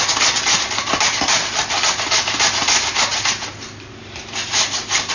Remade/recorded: recorded